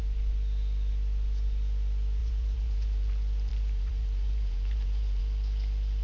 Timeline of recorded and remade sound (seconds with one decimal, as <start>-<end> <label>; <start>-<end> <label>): 0.0-2.2 recorded; 2.2-3.1 remade; 3.1-3.5 recorded; 3.5-5.2 remade; 5.2-6.0 recorded